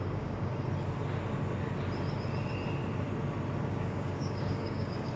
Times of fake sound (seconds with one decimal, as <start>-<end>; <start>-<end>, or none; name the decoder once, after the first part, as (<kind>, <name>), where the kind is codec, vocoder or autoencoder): 0.0-0.5 (codec, DAC); 3.6-5.2